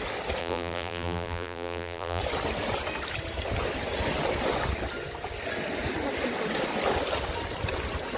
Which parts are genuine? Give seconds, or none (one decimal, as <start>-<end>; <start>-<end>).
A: 0.0-0.4; 2.2-8.2